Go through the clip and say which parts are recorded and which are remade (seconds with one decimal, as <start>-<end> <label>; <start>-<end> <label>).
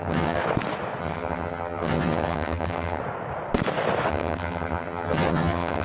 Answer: 0.0-0.4 remade; 0.4-1.0 recorded; 1.0-3.0 remade; 3.0-4.1 recorded; 4.1-5.8 remade